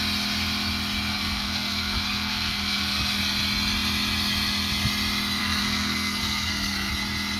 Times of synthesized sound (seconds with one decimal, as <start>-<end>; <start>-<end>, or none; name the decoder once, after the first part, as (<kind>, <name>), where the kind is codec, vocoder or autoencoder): 1.1-3.2 (codec, SNAC); 5.4-6.9